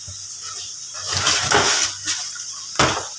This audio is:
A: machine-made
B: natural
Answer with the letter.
B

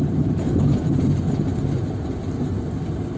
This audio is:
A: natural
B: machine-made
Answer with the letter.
A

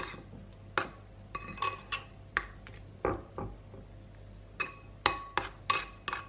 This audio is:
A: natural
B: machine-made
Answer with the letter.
A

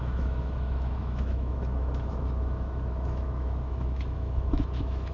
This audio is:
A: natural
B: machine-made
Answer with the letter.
B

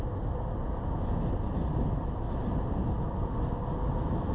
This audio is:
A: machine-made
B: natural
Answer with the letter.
B